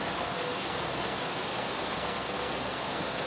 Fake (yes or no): yes